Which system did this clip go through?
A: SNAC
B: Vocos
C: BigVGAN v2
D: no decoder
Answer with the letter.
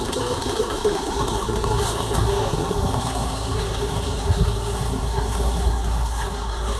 A